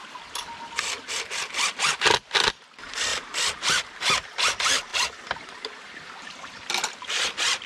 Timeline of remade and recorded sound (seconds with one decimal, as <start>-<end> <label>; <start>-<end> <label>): 0.0-7.7 recorded